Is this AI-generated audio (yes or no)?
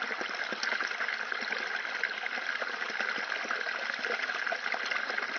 no